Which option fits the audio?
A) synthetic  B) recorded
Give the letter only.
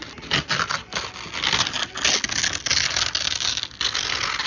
B